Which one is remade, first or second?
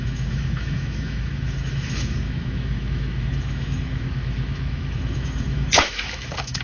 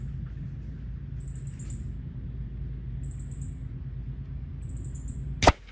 first